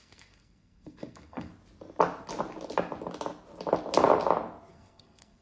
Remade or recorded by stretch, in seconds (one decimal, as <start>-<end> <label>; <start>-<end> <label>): 0.0-1.5 remade; 1.5-4.7 recorded; 4.7-5.4 remade